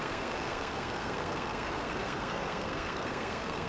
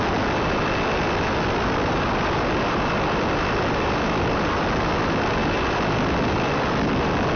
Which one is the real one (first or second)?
second